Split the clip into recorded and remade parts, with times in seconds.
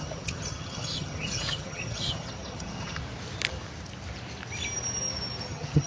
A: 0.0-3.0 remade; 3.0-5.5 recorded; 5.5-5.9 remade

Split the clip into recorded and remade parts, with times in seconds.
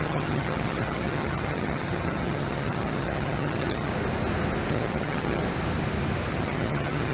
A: 0.0-3.9 remade; 3.9-4.7 recorded; 4.7-5.4 remade; 5.4-6.3 recorded; 6.3-7.1 remade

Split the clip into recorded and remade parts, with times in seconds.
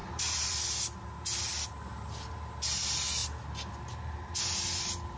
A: 0.0-5.2 recorded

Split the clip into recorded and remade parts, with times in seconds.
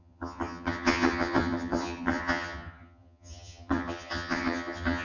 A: 0.0-5.0 remade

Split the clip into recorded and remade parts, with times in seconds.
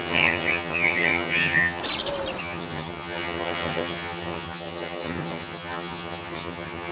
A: 0.0-1.8 remade; 1.8-2.4 recorded; 2.4-6.9 remade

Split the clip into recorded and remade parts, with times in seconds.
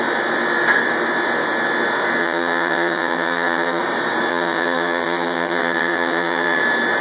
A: 0.0-2.2 recorded; 2.2-3.8 remade; 3.8-4.3 recorded; 4.3-6.6 remade; 6.6-7.0 recorded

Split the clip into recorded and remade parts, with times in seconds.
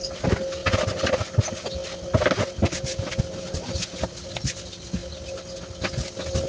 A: 0.0-6.5 recorded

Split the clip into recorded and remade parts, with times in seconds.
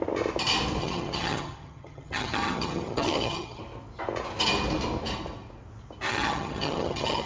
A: 0.0-0.8 recorded; 0.8-3.6 remade; 3.6-6.1 recorded; 6.1-7.3 remade